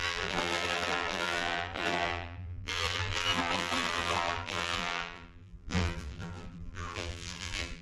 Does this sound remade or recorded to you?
remade